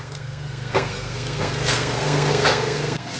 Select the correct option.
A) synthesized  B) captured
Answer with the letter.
A